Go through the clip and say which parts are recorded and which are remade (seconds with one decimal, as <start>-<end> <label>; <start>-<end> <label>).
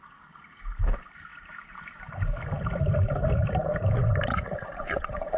0.0-4.3 recorded; 4.3-5.4 remade